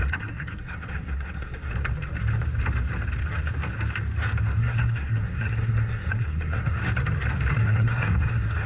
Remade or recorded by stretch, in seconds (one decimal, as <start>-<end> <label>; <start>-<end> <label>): 0.0-1.7 remade; 1.7-4.6 recorded; 4.6-6.8 remade; 6.8-7.5 recorded; 7.5-8.7 remade